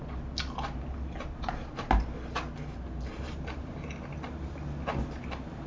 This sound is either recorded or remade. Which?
recorded